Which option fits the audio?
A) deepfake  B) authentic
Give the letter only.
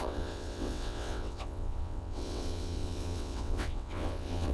A